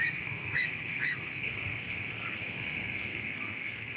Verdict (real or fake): fake